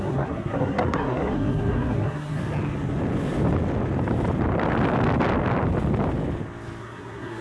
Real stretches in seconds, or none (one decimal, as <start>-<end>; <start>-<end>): 2.4-6.8